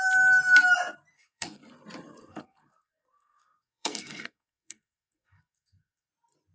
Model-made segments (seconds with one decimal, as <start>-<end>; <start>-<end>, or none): 1.1-1.6; 2.2-6.1